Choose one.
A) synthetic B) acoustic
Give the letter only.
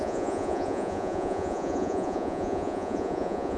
A